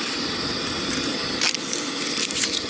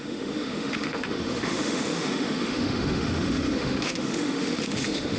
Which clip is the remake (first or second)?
second